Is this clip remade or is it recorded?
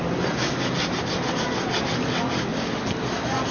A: recorded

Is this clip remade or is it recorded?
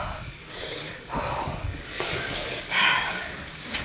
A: remade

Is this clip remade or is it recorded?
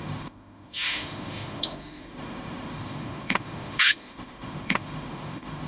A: remade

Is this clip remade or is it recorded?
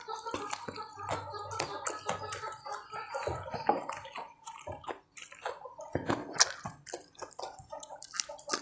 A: recorded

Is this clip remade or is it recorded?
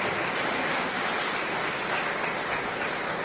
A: recorded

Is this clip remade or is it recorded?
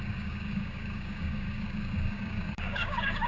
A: remade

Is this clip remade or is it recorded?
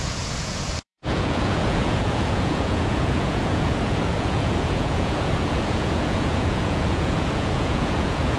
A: remade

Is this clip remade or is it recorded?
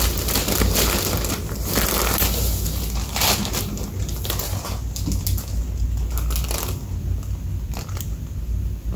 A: recorded